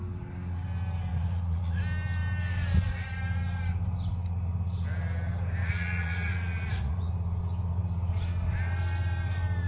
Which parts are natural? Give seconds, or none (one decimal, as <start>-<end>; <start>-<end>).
0.0-1.1; 1.8-5.6; 7.1-9.7